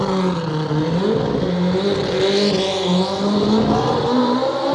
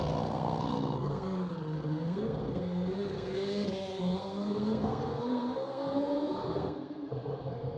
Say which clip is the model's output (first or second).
second